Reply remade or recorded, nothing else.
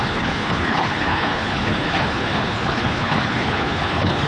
remade